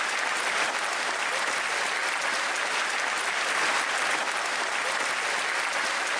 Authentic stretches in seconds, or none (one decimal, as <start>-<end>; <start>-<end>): 0.0-6.2